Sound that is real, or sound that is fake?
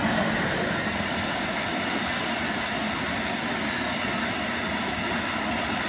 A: real